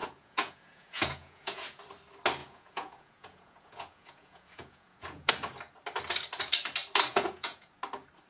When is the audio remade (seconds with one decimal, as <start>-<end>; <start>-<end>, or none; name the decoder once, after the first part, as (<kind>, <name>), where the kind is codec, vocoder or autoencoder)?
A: 0.0-1.8 (vocoder, Vocos); 2.4-5.3; 7.1-7.8